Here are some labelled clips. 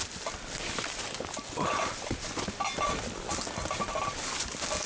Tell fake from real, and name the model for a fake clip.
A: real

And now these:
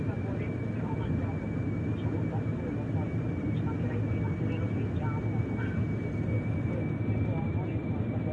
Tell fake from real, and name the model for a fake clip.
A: real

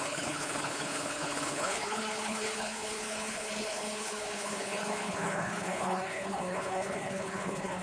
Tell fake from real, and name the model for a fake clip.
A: fake, codec, HILCodec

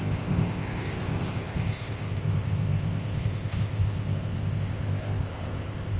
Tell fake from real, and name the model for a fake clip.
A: fake, codec, ZipCodec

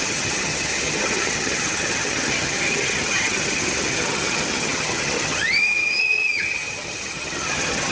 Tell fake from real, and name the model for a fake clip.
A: fake, vocoder, HiFi-GAN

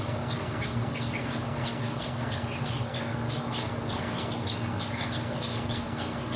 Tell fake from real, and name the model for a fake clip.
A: fake, codec, SNAC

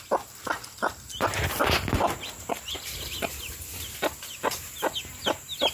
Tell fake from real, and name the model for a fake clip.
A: real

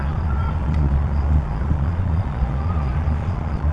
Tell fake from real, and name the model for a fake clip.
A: fake, vocoder, Vocos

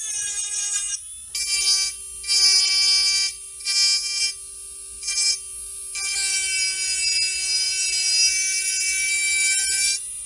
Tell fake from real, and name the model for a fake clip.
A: real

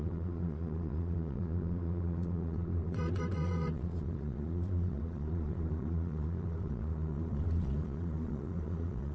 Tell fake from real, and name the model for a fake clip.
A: fake, vocoder, Vocos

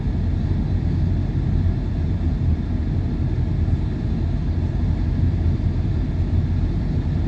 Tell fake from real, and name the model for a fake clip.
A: real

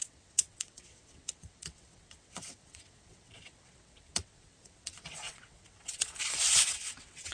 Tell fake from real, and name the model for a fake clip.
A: fake, vocoder, WaveNeXt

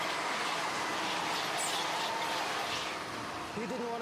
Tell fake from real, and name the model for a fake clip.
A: real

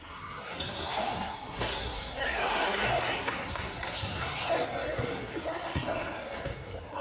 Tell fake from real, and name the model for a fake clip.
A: fake, codec, SNAC